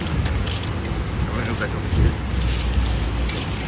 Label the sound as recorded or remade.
recorded